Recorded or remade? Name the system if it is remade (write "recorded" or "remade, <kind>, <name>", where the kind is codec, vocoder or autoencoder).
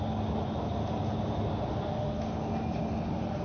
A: recorded